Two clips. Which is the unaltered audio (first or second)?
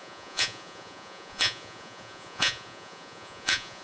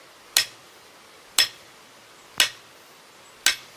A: second